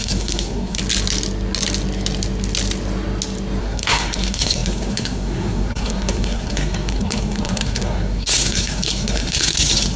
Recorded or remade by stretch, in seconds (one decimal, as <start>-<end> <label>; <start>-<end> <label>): 0.0-0.8 remade; 0.8-3.6 recorded; 3.6-10.0 remade